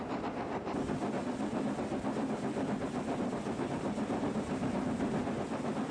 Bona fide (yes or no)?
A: yes